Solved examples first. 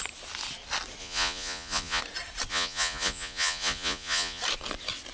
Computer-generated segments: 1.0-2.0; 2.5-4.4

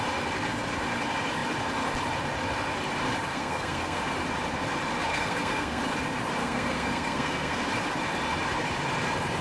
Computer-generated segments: 3.3-4.0; 5.1-5.8; 6.4-7.6

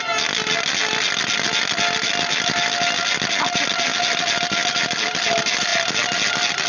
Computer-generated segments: none

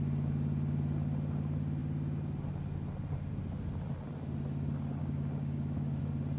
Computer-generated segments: 5.0-6.0

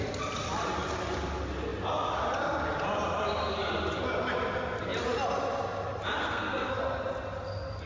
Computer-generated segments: 6.2-6.7

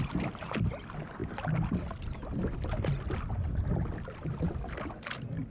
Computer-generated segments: none

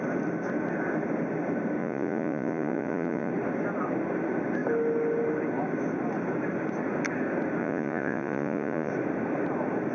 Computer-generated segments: 1.8-3.3; 7.6-8.9